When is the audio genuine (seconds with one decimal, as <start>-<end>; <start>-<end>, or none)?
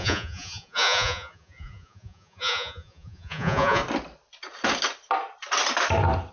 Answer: 3.8-6.3